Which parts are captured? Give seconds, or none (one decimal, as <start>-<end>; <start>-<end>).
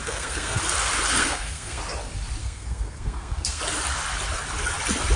0.6-1.2; 1.8-2.4; 3.6-5.2